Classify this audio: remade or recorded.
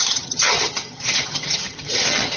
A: remade